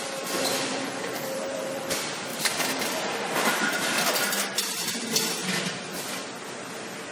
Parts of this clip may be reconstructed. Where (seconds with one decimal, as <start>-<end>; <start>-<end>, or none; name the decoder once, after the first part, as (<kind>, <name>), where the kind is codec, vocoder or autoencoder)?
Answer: 0.7-1.8 (vocoder, BigVGAN v2); 2.3-3.8